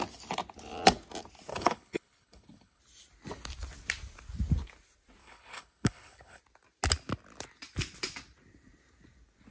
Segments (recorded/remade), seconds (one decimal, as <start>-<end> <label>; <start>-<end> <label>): 0.0-1.5 recorded; 1.5-2.8 remade; 2.8-5.2 recorded; 5.2-6.4 remade; 6.4-9.5 recorded